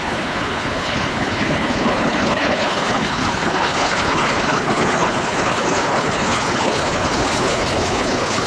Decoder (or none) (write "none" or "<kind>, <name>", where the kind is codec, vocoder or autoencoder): codec, HILCodec